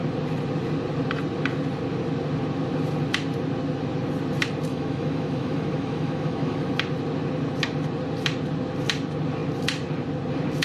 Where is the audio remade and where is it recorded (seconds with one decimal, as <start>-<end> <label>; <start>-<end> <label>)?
0.0-4.7 recorded; 4.7-6.7 remade; 6.7-10.6 recorded